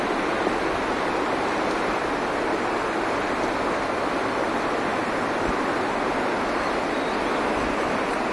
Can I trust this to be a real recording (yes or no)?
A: yes